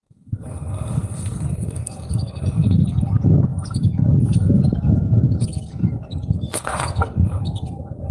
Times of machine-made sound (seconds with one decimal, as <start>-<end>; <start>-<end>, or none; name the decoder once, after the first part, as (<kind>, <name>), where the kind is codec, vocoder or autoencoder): 0.0-8.1 (codec, SNAC)